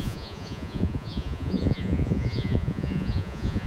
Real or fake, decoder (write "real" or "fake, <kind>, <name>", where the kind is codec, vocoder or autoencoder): fake, vocoder, Vocos